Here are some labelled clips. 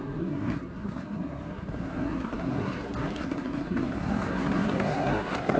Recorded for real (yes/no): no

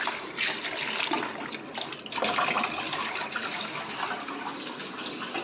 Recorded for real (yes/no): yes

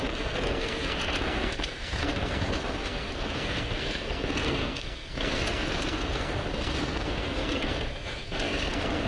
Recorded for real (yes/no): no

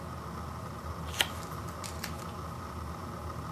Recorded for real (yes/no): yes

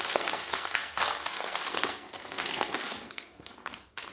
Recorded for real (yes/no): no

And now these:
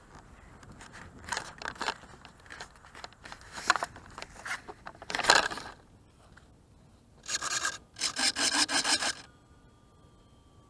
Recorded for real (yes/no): yes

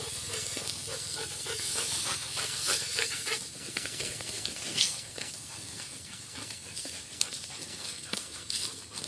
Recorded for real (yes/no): no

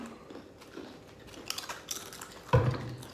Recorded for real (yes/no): yes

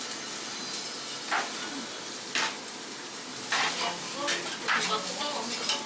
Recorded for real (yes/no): yes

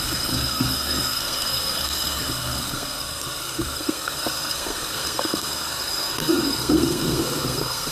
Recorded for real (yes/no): no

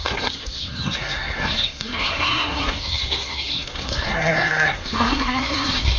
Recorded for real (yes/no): no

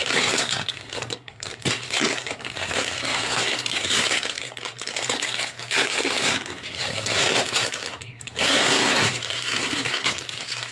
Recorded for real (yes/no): no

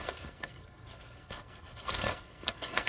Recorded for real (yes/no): no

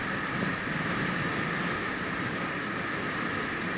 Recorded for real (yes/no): yes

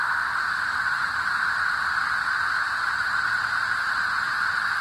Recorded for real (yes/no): yes